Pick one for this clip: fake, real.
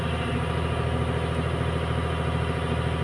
real